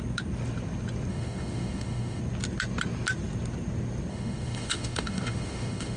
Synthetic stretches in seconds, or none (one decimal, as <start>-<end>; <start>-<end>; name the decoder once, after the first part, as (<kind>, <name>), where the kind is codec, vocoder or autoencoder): 1.1-2.2 (autoencoder, DAC-VAE); 4.1-6.0